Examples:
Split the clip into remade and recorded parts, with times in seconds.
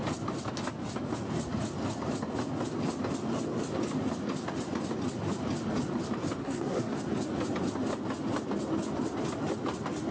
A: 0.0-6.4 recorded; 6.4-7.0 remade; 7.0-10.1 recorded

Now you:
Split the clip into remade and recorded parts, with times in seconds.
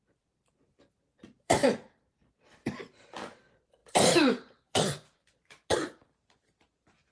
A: 0.0-7.1 remade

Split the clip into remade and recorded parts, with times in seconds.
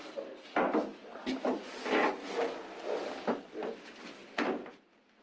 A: 0.0-5.2 recorded